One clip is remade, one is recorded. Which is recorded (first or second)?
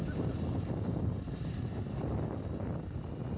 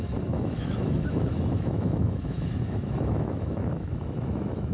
first